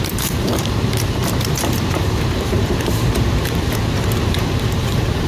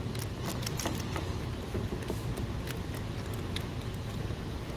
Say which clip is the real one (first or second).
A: second